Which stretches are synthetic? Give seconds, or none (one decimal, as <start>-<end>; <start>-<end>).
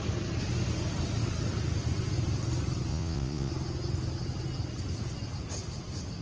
2.9-3.5